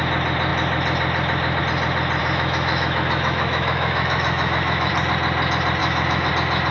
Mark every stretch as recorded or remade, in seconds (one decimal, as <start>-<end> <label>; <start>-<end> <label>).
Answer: 0.0-2.2 recorded; 2.2-4.9 remade; 4.9-5.8 recorded; 5.8-6.3 remade; 6.3-6.7 recorded